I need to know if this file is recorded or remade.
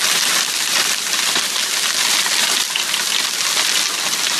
recorded